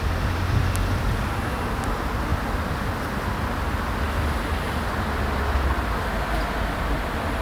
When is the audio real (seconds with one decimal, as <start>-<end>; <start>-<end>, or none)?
0.0-7.4